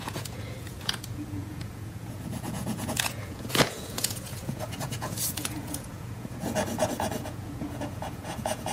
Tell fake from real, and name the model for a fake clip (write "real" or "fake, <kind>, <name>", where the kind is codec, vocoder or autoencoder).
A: fake, vocoder, Vocos